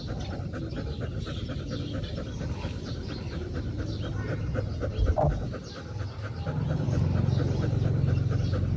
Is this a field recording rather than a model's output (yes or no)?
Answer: yes